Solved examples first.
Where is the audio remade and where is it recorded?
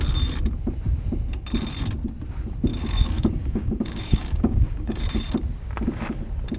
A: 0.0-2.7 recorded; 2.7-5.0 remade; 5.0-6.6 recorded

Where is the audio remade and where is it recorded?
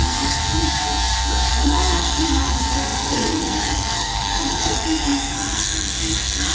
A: 0.0-0.4 remade; 0.4-1.5 recorded; 1.5-6.5 remade